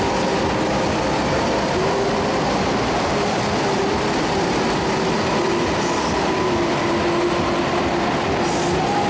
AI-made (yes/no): no